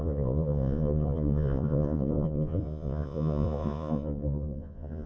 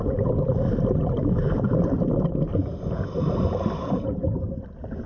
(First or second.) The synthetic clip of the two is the first